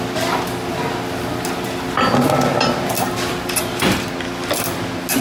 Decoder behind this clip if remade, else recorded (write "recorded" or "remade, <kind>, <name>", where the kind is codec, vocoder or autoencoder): recorded